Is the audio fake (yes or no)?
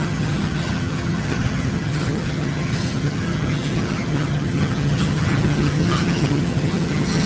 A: yes